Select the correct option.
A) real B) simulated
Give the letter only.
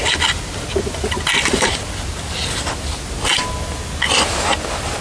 A